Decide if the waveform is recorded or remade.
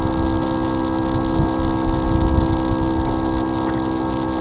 recorded